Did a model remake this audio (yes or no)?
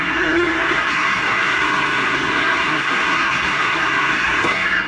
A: yes